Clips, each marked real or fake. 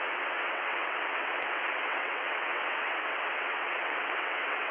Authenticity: fake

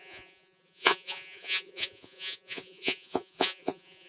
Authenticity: fake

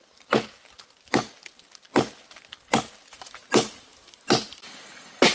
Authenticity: real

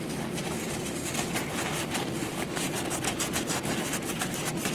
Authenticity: real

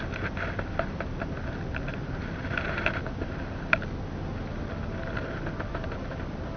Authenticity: real